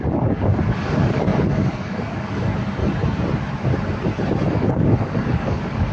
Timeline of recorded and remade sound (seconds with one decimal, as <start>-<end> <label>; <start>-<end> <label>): 0.0-2.8 remade; 2.8-4.5 recorded; 4.5-5.9 remade